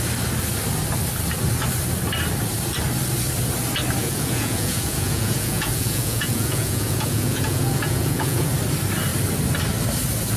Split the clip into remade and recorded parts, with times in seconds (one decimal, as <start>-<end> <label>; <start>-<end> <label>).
0.0-4.0 recorded; 4.0-8.5 remade; 8.5-10.4 recorded